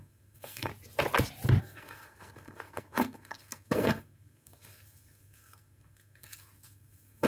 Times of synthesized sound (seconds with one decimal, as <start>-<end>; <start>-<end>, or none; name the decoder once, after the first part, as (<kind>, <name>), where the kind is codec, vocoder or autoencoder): 0.0-0.7 (codec, SNAC); 1.6-7.3

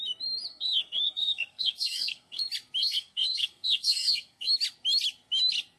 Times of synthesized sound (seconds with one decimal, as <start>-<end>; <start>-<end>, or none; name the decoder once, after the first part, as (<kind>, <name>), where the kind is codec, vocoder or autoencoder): 0.5-2.4 (codec, SNAC); 2.8-4.5

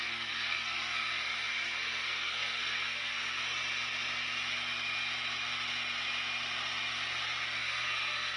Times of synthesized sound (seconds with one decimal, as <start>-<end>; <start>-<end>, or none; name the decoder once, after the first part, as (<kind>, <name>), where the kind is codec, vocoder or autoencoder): 0.0-3.4 (codec, SNAC); 7.6-8.4

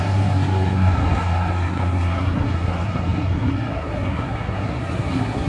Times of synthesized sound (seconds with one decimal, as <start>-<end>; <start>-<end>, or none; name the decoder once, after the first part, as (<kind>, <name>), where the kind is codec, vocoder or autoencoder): 0.0-5.5 (codec, SNAC)

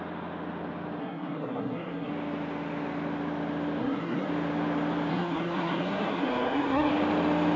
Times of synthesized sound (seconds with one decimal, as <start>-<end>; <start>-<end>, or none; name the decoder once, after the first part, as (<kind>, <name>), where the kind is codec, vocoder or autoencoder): 1.0-2.1 (codec, SNAC); 3.8-4.3; 5.1-6.9

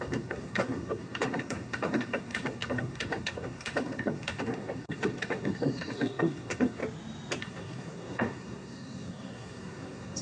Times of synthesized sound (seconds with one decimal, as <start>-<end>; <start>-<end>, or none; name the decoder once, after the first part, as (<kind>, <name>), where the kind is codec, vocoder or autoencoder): 0.0-6.8 (codec, SNAC); 7.4-10.2

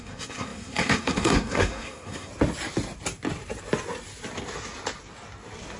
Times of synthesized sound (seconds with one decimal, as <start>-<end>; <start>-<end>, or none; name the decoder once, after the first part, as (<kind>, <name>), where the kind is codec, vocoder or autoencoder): 0.0-2.3 (codec, SNAC)

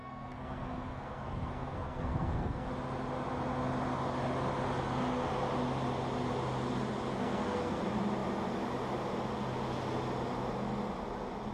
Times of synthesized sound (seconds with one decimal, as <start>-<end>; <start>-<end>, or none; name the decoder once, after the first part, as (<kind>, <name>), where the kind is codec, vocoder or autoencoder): 0.0-2.7 (codec, SNAC); 7.1-7.8